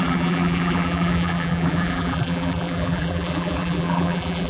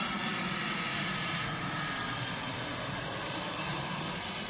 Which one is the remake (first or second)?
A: first